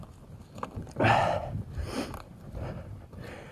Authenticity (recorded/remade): remade